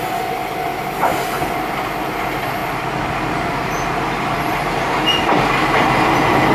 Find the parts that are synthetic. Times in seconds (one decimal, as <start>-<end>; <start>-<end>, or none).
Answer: 2.6-4.9